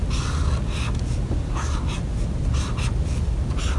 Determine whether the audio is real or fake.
real